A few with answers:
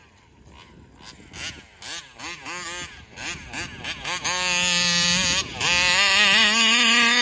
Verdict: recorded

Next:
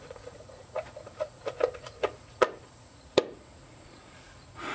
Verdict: remade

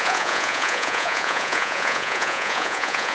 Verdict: remade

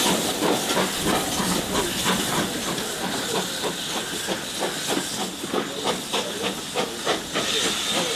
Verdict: recorded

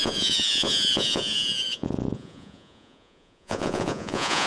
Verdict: remade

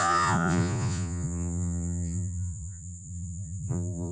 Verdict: remade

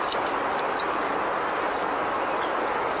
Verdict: recorded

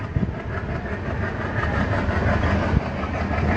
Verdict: recorded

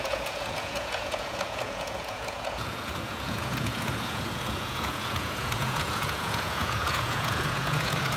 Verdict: remade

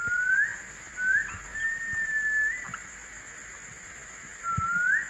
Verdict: recorded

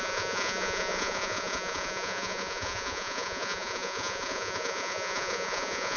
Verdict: remade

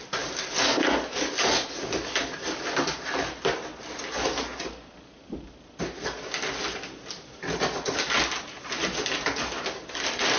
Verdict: recorded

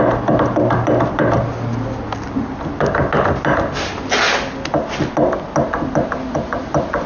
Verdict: recorded